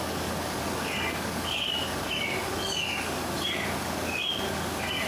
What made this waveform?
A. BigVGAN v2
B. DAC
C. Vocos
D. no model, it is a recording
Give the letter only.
B